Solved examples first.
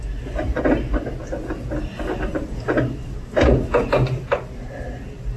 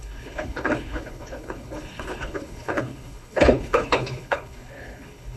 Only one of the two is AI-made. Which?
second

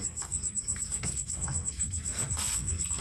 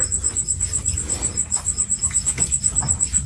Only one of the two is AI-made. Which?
first